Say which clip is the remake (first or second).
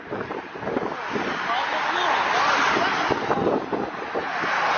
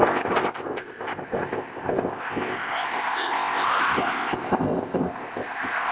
second